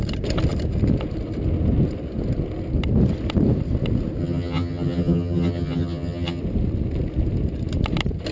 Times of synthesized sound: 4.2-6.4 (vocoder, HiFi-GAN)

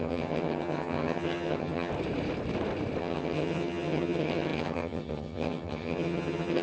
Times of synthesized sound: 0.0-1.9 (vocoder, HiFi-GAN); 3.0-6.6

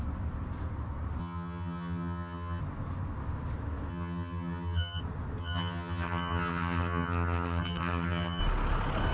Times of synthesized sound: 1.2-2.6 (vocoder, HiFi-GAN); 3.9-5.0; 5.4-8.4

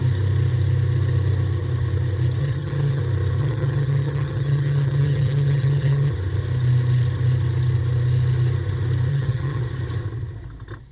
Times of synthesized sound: 2.4-3.0 (vocoder, HiFi-GAN); 3.4-6.1; 9.1-9.6

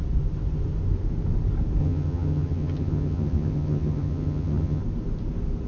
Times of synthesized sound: 1.8-4.8 (vocoder, HiFi-GAN)

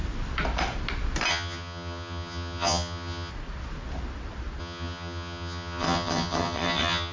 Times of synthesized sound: 1.3-3.3 (vocoder, HiFi-GAN); 4.6-7.1